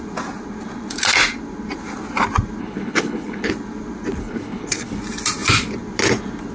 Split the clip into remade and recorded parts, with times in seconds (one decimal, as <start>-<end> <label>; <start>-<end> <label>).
0.0-2.6 recorded; 2.6-3.5 remade; 3.5-4.2 recorded; 4.2-5.0 remade; 5.0-6.5 recorded